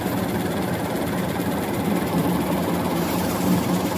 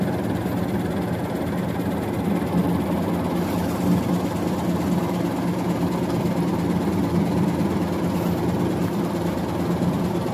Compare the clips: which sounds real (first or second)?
second